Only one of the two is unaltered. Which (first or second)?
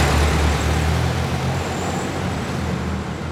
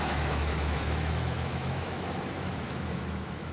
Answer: first